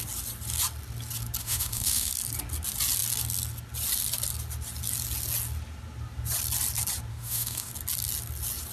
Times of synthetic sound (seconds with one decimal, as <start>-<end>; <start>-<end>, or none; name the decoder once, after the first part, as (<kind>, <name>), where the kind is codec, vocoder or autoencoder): 1.4-2.1 (autoencoder, DAC-VAE); 7.1-7.7